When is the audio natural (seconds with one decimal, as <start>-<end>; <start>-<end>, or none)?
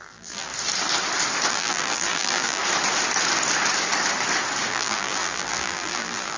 0.5-1.5; 2.6-4.7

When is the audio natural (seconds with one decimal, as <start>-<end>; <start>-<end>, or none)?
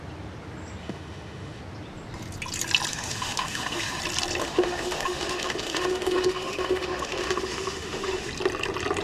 0.0-0.8; 1.6-2.9; 4.0-4.4; 8.3-9.0